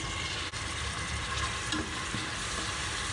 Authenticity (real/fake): real